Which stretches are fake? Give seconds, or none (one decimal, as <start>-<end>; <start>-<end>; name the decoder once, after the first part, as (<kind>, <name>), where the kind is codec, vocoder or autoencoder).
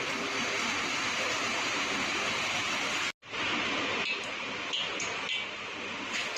none